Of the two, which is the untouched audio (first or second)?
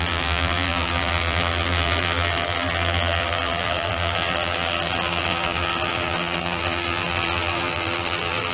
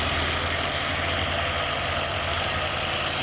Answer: second